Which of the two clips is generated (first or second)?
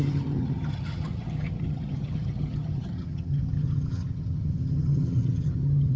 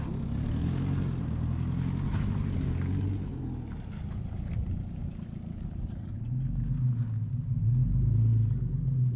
first